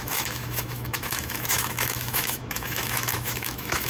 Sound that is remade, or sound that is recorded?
remade